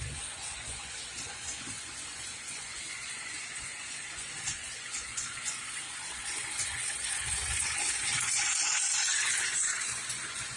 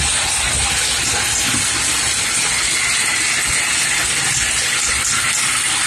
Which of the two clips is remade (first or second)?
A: first